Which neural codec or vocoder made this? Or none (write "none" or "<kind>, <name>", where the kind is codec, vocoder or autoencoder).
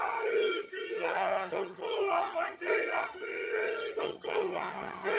vocoder, HiFi-GAN